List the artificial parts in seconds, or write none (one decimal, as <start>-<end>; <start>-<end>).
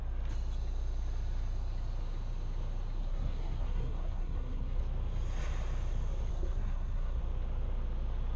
3.0-4.8; 6.3-7.2